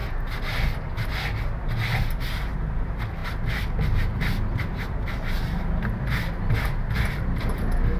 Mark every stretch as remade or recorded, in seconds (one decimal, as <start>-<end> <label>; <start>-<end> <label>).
0.0-8.0 recorded